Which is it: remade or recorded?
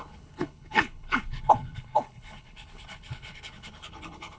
remade